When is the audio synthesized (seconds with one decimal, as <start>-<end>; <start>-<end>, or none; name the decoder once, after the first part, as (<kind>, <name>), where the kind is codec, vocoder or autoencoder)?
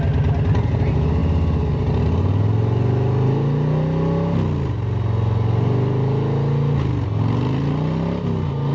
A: none